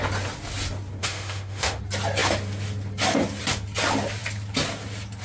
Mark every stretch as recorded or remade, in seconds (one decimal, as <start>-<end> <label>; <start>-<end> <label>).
0.0-1.0 recorded; 1.0-1.8 remade; 1.8-5.2 recorded